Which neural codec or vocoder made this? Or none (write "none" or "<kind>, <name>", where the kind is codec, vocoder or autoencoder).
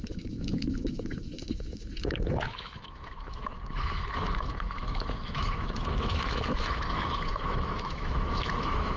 autoencoder, DAC-VAE